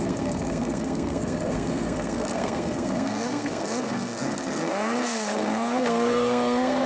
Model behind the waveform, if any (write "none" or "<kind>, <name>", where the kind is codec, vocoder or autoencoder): codec, SNAC